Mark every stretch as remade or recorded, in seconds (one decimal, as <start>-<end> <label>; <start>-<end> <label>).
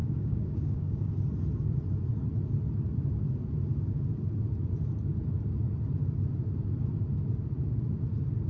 0.0-1.1 remade; 1.1-8.5 recorded